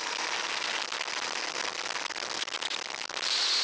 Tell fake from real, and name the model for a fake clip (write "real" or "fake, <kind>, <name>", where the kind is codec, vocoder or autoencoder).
real